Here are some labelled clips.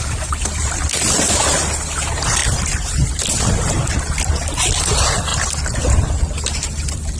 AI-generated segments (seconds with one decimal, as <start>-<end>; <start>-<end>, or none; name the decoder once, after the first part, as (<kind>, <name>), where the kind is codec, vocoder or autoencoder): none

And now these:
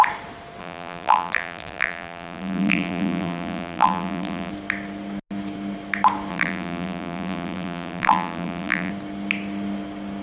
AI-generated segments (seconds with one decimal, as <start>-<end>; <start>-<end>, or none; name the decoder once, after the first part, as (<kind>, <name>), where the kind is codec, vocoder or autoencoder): 0.6-4.5 (vocoder, BigVGAN v2); 6.3-8.9

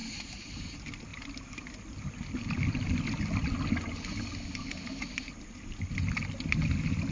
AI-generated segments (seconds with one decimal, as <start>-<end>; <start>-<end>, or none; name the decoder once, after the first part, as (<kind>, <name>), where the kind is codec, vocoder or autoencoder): 0.0-0.5 (vocoder, BigVGAN v2)

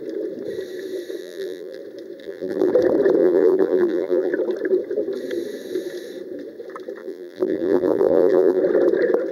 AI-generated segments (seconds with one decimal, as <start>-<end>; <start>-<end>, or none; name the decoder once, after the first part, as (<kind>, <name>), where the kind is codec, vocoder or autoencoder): 1.2-1.8 (vocoder, BigVGAN v2); 2.2-2.7; 3.2-4.3; 7.0-8.6